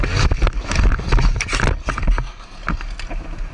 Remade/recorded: recorded